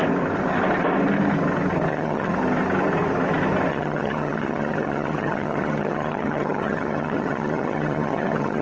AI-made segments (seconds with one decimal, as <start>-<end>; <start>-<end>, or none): 1.9-2.3; 3.7-8.6